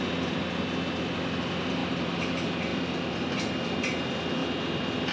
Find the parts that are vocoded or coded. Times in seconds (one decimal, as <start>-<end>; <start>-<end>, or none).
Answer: none